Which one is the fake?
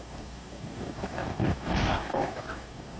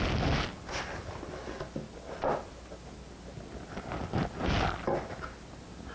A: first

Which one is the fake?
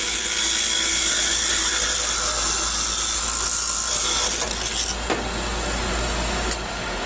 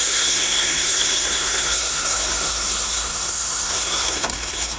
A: second